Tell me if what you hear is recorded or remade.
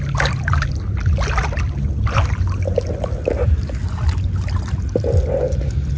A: recorded